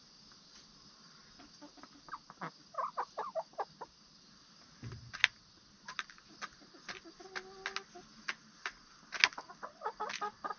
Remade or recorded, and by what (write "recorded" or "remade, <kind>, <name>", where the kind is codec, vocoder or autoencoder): recorded